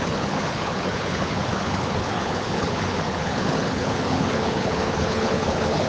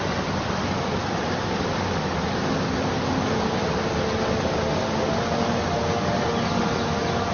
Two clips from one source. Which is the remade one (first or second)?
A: first